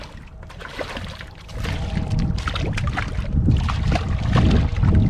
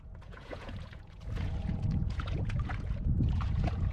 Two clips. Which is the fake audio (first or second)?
second